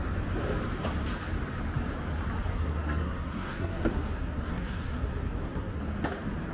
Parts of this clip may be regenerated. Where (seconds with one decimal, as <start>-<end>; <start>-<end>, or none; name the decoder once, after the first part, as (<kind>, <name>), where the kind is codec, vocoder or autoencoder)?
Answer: 2.5-5.8 (codec, SNAC)

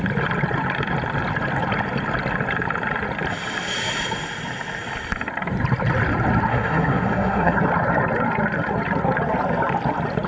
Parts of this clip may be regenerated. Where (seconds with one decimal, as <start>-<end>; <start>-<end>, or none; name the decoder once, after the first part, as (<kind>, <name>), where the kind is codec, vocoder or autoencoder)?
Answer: 6.5-7.6 (codec, SNAC)

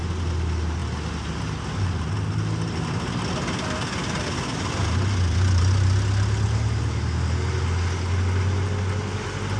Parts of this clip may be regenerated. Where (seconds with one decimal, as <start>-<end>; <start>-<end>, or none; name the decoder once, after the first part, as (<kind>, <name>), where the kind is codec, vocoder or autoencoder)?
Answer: none

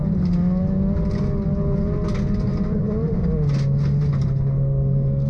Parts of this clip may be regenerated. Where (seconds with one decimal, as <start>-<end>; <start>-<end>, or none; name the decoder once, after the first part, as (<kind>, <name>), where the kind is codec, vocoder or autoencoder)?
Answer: 4.5-5.3 (codec, SNAC)

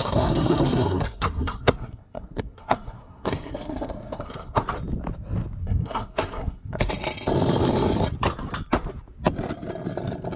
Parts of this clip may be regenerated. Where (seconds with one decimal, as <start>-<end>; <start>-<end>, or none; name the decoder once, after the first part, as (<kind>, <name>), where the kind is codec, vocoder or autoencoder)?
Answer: 0.0-4.6 (codec, SNAC); 5.6-6.9

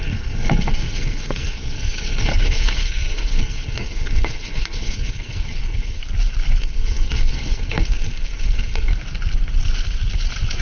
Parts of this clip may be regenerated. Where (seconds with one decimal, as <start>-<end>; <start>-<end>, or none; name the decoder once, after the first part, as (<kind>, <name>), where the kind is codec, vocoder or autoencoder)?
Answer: 0.0-6.0 (codec, SNAC); 6.6-8.9

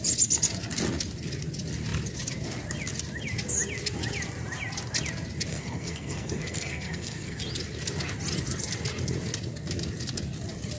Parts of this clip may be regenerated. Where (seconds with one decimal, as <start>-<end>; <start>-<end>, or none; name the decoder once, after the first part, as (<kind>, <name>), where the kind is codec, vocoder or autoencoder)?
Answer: 5.5-7.4 (codec, SNAC)